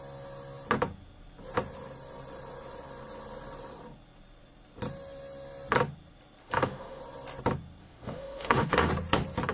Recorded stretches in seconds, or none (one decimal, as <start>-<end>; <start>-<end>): 0.0-6.4; 7.0-7.8; 8.9-9.5